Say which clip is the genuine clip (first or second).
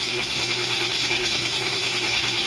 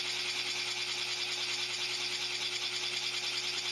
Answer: second